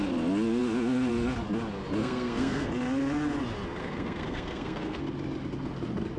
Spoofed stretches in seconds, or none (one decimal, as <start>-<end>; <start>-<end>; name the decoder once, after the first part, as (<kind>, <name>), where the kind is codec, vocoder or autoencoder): 2.0-2.7 (codec, SNAC); 3.8-5.0